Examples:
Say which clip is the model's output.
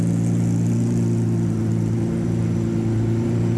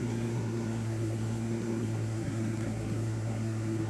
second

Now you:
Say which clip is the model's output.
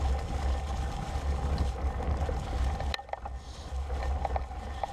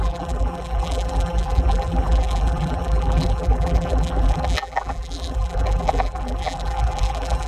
second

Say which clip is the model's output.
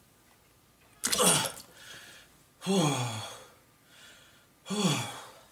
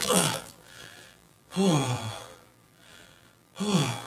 second